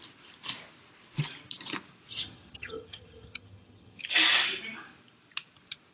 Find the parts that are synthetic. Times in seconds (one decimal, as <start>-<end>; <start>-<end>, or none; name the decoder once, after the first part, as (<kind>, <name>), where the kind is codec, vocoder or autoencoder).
2.1-4.0 (vocoder, HiFi-GAN)